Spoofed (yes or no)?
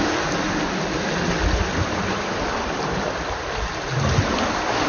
yes